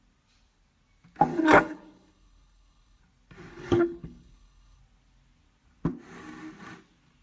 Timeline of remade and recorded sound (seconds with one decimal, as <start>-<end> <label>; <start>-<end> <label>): 0.0-1.3 recorded; 1.3-3.0 remade; 3.0-3.5 recorded; 3.5-4.8 remade; 4.8-7.2 recorded